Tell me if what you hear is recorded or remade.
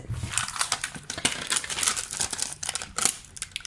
recorded